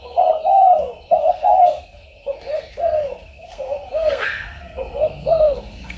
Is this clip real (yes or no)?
no